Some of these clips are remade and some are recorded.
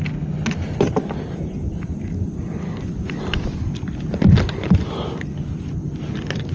recorded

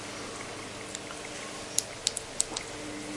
recorded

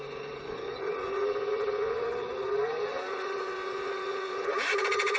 remade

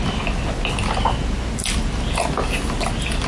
recorded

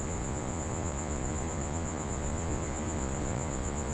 remade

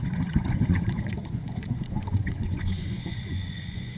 remade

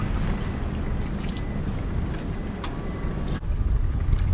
recorded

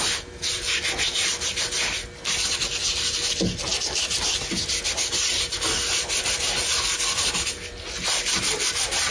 recorded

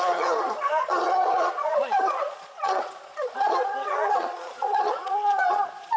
remade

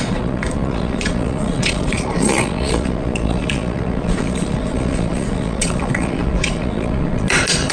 remade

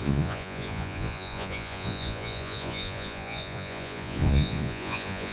remade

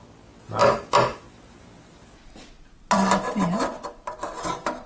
recorded